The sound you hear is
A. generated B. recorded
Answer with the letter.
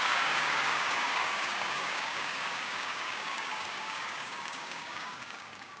A